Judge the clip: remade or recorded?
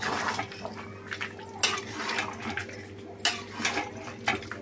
recorded